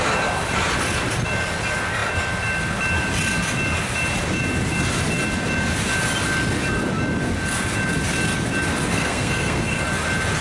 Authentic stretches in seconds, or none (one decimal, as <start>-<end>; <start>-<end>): 0.0-8.9; 9.8-10.4